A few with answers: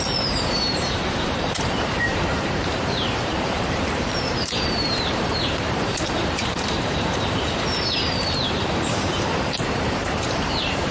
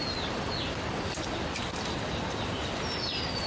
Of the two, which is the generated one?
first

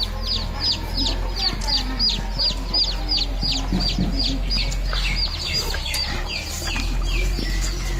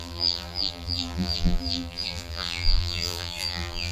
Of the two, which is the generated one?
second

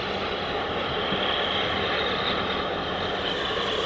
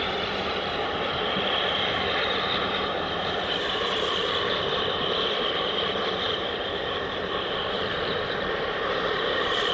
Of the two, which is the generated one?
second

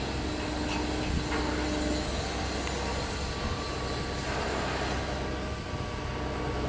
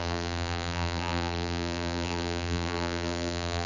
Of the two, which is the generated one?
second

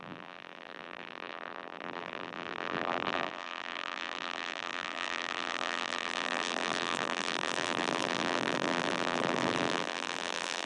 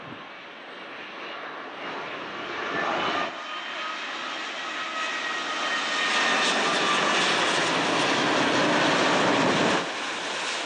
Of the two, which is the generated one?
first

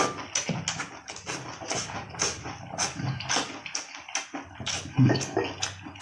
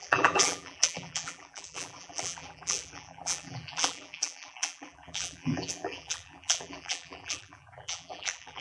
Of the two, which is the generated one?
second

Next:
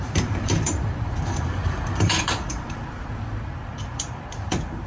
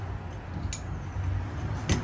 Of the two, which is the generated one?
first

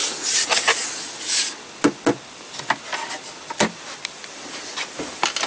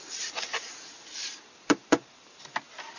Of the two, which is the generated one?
second